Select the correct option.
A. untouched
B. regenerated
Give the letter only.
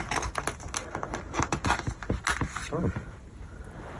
A